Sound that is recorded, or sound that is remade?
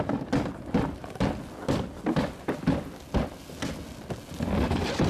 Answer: recorded